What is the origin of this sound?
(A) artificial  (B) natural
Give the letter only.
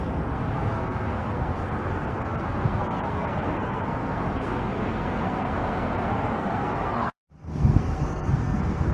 A